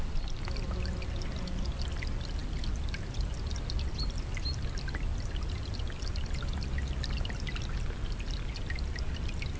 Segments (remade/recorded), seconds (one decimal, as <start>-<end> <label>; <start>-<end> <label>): 0.0-9.6 recorded